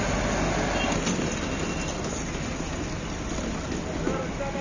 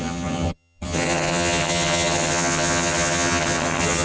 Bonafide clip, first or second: first